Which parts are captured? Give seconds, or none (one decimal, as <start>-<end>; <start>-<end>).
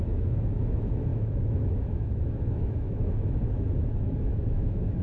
none